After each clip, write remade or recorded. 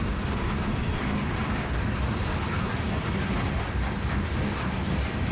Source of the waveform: recorded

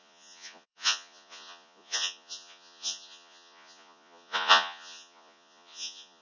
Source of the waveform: remade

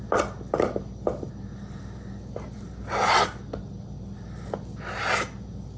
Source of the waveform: recorded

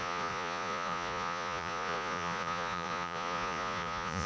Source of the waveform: remade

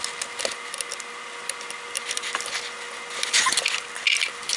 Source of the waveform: recorded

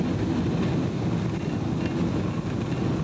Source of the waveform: recorded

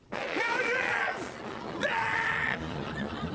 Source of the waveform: remade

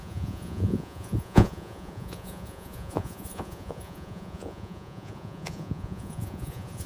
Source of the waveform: remade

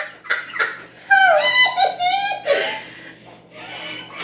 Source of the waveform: recorded